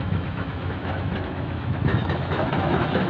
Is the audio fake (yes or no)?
yes